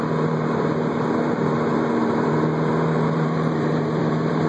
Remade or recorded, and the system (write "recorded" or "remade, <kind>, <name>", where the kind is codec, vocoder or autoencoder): remade, vocoder, BigVGAN v2